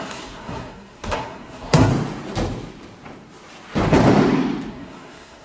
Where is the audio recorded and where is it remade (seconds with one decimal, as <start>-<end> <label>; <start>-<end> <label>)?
0.0-1.9 remade; 1.9-4.7 recorded; 4.7-5.4 remade